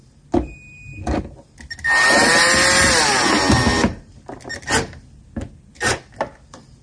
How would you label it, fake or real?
real